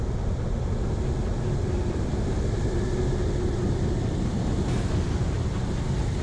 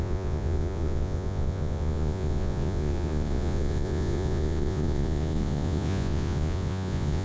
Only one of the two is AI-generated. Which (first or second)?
second